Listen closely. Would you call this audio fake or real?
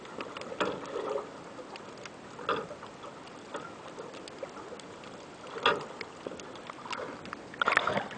real